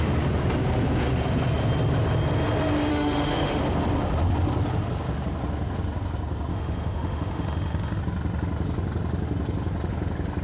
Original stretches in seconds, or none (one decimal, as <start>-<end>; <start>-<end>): 0.0-2.9; 3.6-6.5; 8.0-10.4